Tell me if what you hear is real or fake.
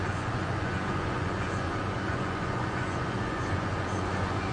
fake